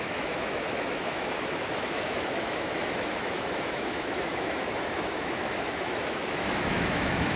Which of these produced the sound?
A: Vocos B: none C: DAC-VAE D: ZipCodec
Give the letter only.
C